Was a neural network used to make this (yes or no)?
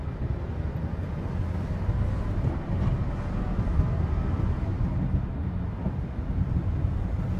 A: no